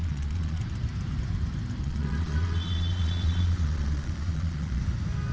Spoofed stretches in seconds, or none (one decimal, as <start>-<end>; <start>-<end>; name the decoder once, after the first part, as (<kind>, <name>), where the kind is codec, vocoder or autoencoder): 0.0-0.6 (vocoder, Vocos); 1.8-4.8